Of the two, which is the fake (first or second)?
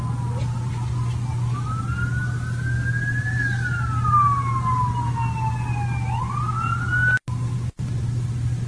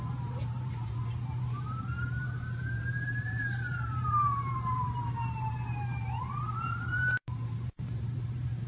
second